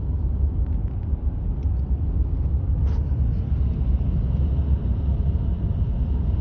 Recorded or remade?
recorded